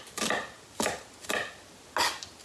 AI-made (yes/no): no